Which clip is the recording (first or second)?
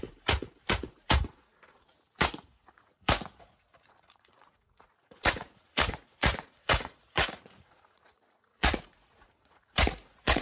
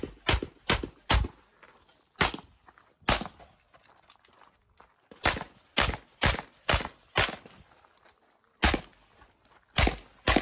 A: second